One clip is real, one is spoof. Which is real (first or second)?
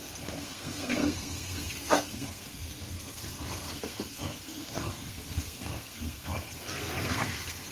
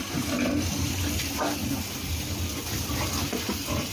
second